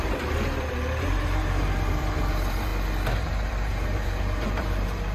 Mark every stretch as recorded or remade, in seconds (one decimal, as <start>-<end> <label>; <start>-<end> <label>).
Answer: 0.0-2.7 remade; 2.7-3.2 recorded; 3.2-5.1 remade